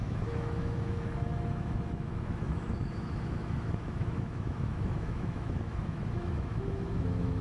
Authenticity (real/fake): fake